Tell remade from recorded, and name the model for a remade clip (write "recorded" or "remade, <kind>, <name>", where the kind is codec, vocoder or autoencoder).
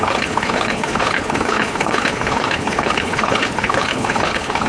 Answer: remade, codec, HILCodec